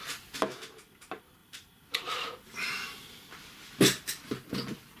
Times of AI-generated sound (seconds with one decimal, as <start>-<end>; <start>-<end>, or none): 1.4-3.1